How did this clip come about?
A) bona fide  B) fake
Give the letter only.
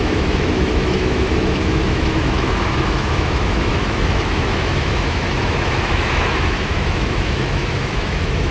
B